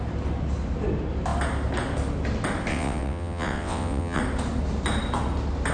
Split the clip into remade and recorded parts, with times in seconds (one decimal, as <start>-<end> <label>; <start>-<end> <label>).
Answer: 0.0-2.7 recorded; 2.7-4.2 remade; 4.2-5.7 recorded